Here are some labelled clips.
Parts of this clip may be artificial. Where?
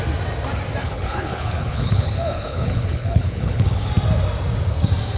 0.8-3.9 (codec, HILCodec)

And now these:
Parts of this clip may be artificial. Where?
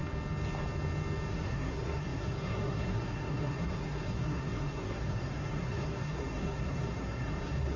1.3-7.8 (codec, SNAC)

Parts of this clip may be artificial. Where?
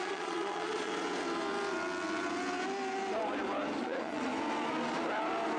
0.0-0.9 (vocoder, Vocos); 3.8-4.3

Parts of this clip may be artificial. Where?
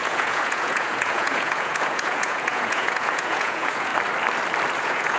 0.0-3.9 (vocoder, Vocos); 4.8-5.2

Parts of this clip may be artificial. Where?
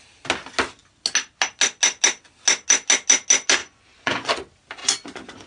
3.6-4.3 (vocoder, Vocos); 4.8-5.5